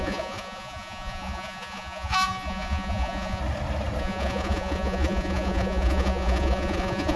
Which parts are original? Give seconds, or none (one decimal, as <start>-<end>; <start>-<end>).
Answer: 3.4-4.0